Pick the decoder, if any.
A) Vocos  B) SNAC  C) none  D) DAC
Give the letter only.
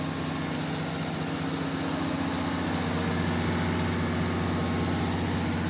C